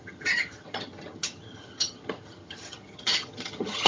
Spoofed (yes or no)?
yes